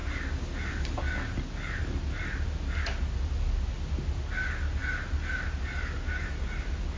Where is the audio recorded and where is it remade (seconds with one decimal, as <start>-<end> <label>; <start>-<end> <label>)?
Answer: 0.0-7.0 recorded

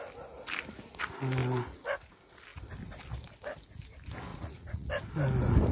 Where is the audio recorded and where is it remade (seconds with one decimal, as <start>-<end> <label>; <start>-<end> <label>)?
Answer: 0.0-4.3 recorded; 4.3-4.9 remade; 4.9-5.7 recorded